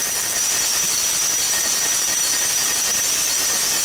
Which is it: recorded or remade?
remade